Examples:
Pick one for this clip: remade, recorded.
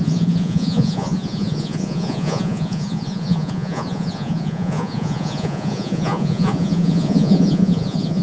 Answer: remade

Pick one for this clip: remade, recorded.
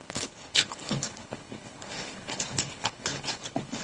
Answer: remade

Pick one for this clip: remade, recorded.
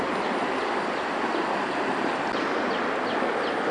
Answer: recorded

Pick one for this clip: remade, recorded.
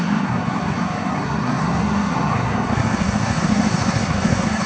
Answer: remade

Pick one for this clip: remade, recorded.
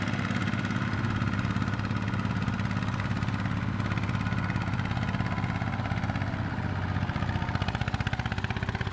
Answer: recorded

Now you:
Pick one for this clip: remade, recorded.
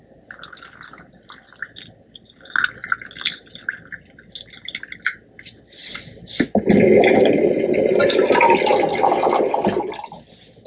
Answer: recorded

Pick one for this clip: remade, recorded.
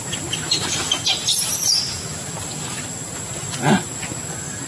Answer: remade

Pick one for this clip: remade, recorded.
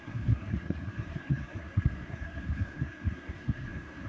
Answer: remade